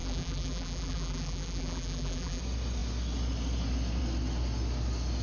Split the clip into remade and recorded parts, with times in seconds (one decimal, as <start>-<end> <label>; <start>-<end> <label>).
0.0-2.4 remade; 2.4-5.2 recorded